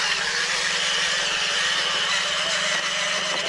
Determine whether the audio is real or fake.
real